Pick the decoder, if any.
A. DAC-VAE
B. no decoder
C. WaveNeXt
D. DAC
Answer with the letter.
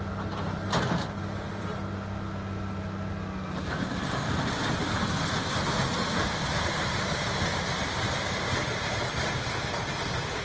B